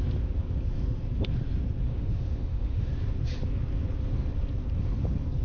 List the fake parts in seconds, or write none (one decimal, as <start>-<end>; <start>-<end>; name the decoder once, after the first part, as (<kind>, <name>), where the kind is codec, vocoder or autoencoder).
1.9-2.9 (autoencoder, DAC-VAE)